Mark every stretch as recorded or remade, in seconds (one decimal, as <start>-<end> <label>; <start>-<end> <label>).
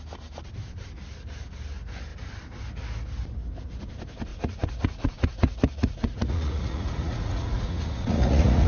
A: 0.0-4.3 recorded; 4.3-8.7 remade